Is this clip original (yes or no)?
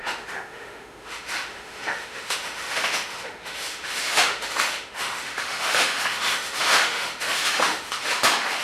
no